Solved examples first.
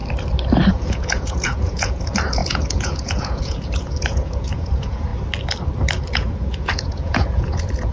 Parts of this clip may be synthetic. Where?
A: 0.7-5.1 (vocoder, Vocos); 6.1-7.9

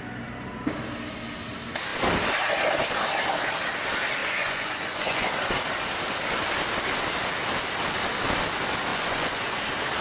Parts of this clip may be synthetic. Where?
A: 4.2-5.3 (vocoder, Vocos); 8.9-9.6

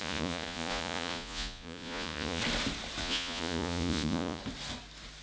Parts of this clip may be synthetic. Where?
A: 0.0-2.4 (vocoder, Vocos); 3.0-4.4

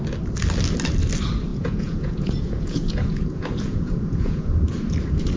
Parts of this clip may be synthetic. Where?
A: 1.5-4.7 (vocoder, Vocos)

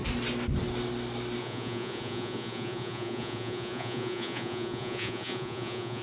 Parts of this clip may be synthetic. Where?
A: 1.4-6.0 (vocoder, Vocos)

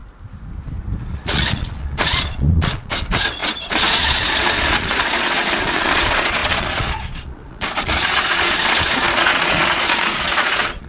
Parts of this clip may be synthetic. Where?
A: 1.1-10.9 (vocoder, Vocos)

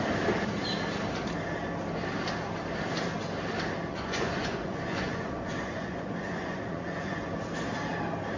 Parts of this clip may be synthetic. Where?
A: 3.9-7.2 (vocoder, Vocos)